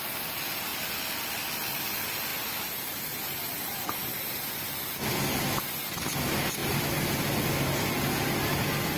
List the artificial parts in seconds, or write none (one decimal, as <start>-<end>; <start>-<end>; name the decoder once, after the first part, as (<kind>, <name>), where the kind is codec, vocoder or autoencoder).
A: 6.6-7.7 (vocoder, BigVGAN v2)